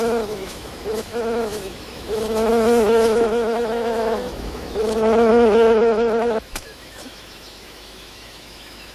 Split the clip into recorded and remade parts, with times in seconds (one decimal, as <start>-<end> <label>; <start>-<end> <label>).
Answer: 0.0-8.9 remade